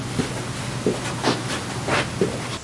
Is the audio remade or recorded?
recorded